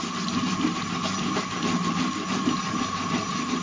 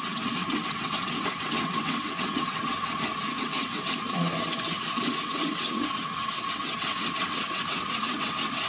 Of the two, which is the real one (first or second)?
first